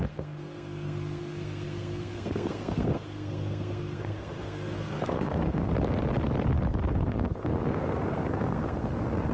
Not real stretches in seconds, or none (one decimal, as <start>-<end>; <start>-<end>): 0.0-5.7; 6.9-9.3